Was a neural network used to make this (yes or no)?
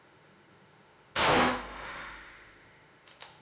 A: yes